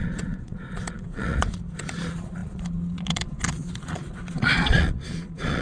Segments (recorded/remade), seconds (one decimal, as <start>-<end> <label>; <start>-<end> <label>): 0.0-5.6 remade